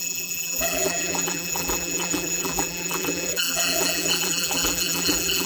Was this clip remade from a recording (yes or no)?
yes